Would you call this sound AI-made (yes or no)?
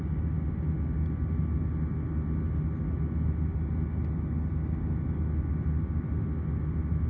no